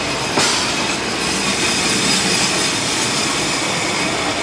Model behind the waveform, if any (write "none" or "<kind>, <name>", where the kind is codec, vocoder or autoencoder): none